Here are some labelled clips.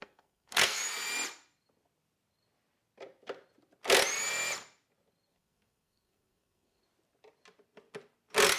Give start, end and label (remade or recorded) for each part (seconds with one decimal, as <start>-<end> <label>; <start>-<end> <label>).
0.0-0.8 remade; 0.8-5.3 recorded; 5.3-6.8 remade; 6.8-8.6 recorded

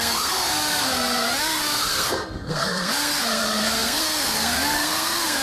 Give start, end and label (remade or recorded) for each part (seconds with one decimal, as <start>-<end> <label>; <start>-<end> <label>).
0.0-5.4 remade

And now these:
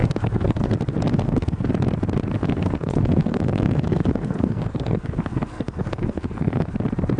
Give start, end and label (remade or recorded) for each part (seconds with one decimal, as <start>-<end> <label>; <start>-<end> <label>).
0.0-0.7 remade; 0.7-1.1 recorded; 1.1-1.7 remade; 1.7-2.4 recorded; 2.4-6.7 remade; 6.7-7.2 recorded

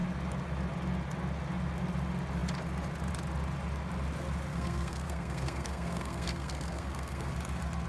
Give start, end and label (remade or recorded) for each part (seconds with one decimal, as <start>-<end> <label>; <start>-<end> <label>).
0.0-4.5 recorded; 4.5-7.3 remade; 7.3-7.9 recorded

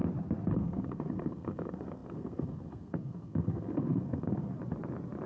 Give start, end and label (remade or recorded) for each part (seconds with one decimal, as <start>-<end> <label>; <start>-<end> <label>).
0.0-0.5 recorded; 0.5-4.5 remade; 4.5-5.3 recorded

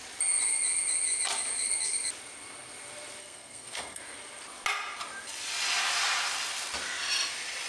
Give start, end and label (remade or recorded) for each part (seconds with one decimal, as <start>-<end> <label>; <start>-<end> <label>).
0.0-3.2 recorded; 3.2-4.0 remade; 4.0-7.7 recorded